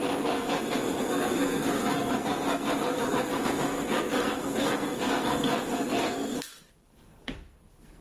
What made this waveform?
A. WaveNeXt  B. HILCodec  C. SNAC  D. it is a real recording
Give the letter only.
C